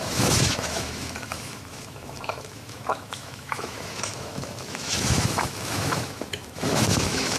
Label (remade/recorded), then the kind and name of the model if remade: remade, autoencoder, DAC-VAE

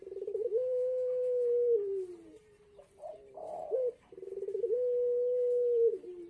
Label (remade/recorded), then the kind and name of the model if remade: remade, vocoder, BigVGAN v2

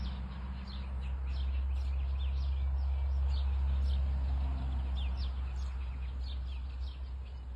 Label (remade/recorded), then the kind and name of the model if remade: recorded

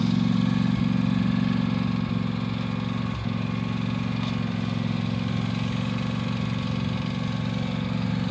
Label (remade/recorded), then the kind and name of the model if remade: recorded